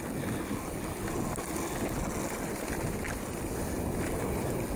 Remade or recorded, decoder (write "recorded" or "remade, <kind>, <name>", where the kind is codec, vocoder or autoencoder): recorded